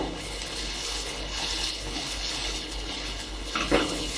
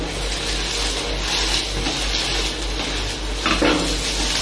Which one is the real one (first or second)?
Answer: second